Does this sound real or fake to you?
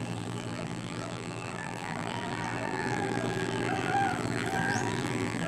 fake